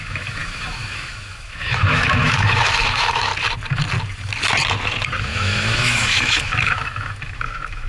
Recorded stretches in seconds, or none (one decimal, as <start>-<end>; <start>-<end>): 3.3-5.2